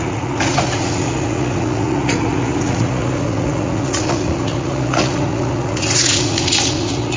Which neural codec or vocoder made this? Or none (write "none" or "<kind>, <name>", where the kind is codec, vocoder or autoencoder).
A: vocoder, Vocos